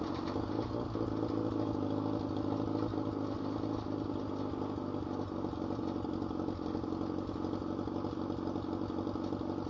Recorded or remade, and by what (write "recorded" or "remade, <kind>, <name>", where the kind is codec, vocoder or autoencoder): recorded